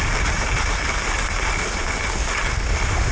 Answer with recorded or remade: recorded